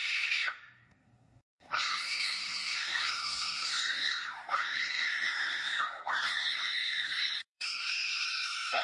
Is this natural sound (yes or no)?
no